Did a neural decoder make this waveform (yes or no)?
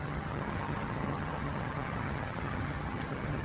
yes